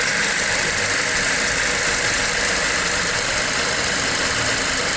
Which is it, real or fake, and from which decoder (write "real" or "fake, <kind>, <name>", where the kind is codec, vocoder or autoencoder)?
real